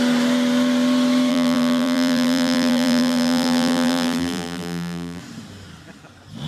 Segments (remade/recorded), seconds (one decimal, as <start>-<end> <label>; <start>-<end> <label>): 0.0-1.3 recorded; 1.3-5.2 remade; 5.2-6.5 recorded